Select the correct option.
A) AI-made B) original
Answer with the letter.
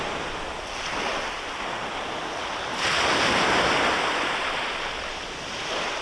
B